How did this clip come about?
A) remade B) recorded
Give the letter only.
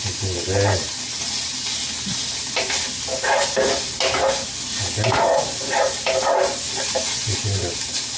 B